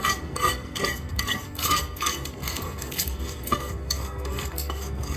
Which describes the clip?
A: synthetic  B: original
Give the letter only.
A